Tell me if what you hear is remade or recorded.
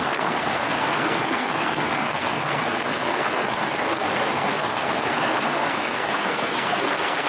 remade